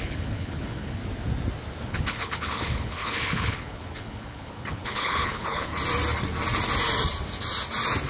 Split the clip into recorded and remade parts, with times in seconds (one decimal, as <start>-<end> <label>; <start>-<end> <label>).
0.0-1.0 remade; 1.0-1.8 recorded; 1.8-5.7 remade; 5.7-8.1 recorded